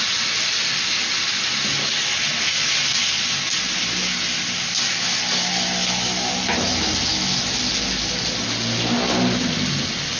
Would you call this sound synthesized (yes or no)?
no